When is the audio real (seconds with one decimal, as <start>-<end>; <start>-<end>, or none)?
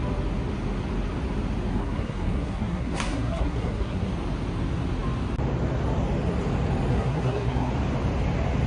0.0-1.7; 4.1-6.9; 7.7-8.7